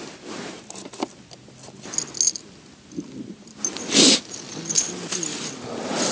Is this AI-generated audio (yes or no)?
no